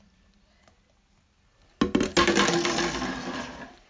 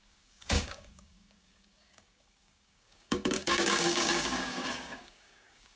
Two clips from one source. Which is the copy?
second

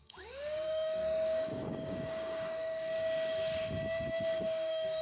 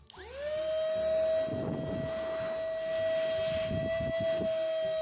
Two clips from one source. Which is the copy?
first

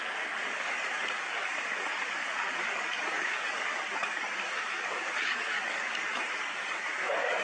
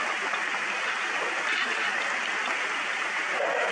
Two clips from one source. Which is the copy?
first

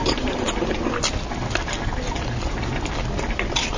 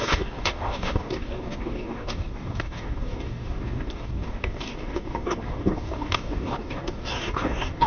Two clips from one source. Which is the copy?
second